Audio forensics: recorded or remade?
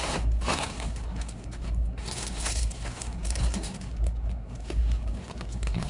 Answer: remade